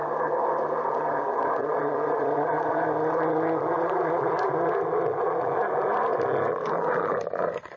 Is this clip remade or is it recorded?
recorded